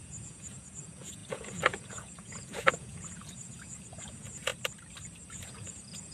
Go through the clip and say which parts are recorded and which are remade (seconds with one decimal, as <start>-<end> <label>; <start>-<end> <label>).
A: 0.0-4.5 remade; 4.5-5.3 recorded; 5.3-6.1 remade